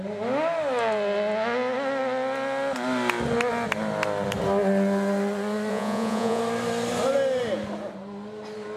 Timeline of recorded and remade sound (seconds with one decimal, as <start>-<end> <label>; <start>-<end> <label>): 0.0-5.7 recorded; 5.7-6.4 remade; 6.4-8.8 recorded